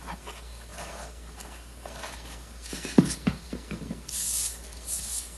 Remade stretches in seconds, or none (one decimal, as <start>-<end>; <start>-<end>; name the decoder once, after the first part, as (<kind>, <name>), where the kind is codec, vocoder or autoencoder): 0.0-5.4 (codec, SNAC)